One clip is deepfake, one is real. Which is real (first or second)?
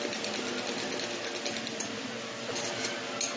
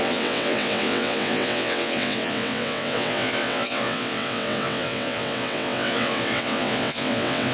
first